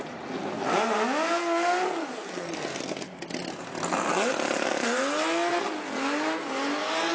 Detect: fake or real real